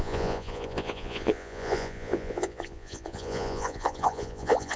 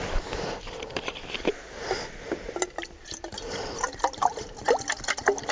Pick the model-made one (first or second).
first